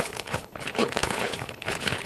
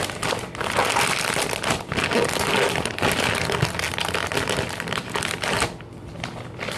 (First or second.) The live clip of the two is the second